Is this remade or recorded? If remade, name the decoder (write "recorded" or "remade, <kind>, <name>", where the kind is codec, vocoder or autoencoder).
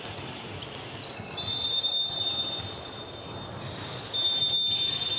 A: recorded